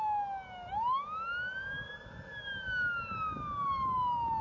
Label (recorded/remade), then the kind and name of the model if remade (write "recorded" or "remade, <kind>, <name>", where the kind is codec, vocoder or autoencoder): recorded